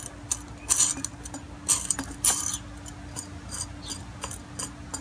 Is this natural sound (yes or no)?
yes